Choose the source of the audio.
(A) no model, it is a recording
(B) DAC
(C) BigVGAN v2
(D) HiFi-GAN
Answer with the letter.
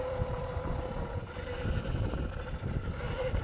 C